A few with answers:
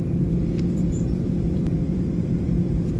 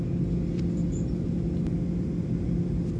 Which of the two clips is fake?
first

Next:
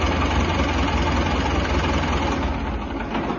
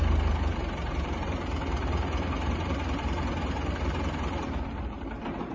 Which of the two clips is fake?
second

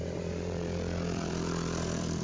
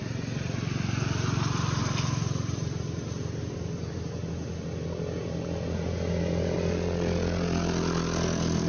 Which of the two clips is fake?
first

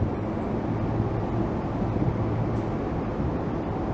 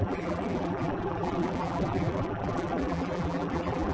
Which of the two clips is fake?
second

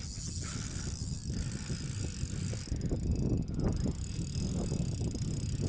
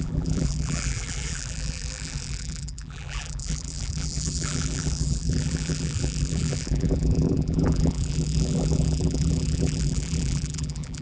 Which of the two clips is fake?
second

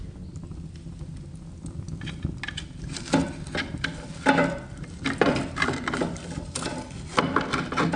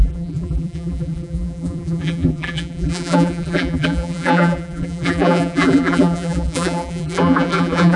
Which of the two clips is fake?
second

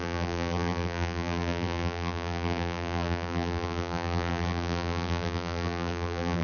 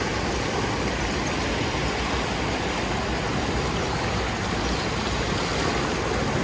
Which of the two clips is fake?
first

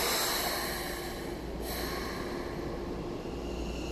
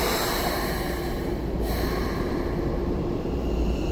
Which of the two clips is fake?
second